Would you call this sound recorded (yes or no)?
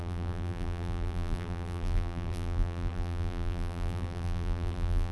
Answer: no